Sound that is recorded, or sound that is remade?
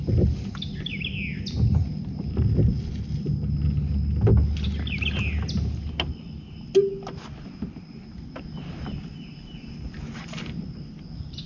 recorded